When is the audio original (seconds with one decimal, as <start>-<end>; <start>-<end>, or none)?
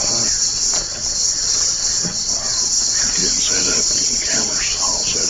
3.2-3.8